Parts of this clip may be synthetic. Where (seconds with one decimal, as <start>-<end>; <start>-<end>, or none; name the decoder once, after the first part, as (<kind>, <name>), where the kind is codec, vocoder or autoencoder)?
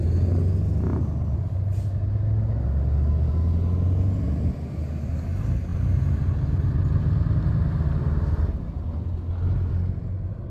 none